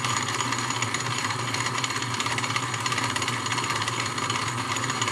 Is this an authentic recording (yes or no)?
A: no